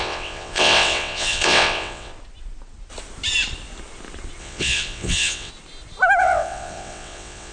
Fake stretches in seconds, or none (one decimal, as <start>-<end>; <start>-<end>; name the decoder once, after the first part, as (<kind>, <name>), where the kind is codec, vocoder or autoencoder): 0.0-2.1 (vocoder, WaveNeXt); 4.4-5.5; 6.2-7.5